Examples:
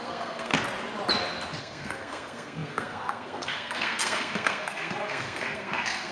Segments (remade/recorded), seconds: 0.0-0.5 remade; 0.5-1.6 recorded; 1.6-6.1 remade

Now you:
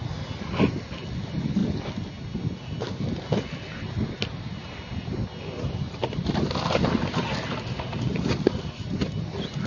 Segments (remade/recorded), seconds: 0.0-9.7 recorded

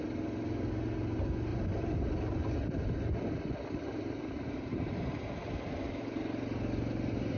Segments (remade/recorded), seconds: 0.0-1.5 recorded; 1.5-5.9 remade; 5.9-7.4 recorded